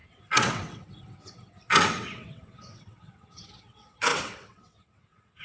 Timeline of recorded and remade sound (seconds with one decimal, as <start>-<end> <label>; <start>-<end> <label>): 0.0-5.4 remade